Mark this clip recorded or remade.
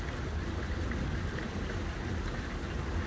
recorded